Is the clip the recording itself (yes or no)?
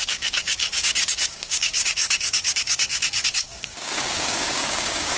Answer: no